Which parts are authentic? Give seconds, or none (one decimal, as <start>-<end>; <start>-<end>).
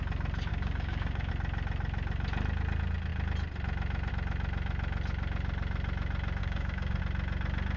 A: 0.0-0.5; 1.3-6.4; 7.0-7.8